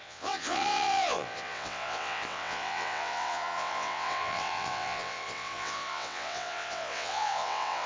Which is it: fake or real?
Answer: fake